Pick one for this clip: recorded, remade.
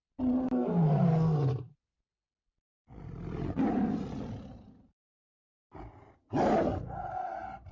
recorded